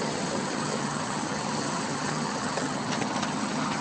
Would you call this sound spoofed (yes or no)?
yes